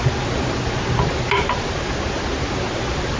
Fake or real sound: real